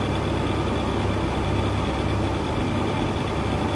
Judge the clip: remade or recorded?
recorded